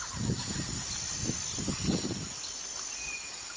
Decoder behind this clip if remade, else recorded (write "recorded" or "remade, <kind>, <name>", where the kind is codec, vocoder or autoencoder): recorded